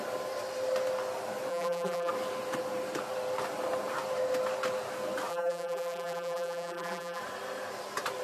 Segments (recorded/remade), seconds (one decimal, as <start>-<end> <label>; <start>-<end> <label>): 0.0-1.5 recorded; 1.5-2.1 remade; 2.1-5.3 recorded; 5.3-7.2 remade; 7.2-8.2 recorded